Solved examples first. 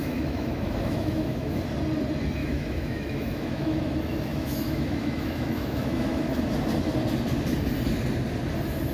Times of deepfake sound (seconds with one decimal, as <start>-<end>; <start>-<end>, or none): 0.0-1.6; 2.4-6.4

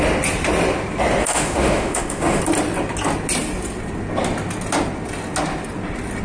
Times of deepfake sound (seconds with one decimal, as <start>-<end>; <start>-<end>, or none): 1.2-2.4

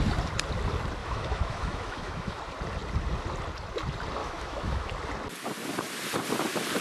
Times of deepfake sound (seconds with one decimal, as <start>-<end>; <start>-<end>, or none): 1.0-2.4; 4.2-4.9

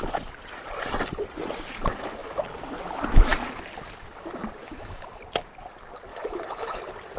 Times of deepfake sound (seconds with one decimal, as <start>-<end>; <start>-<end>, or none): 4.6-5.2; 6.1-6.8